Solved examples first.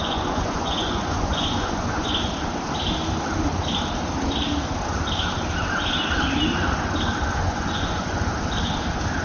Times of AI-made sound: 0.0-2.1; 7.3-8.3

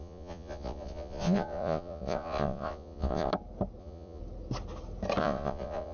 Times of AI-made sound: 0.0-3.3; 3.8-4.2; 5.2-5.9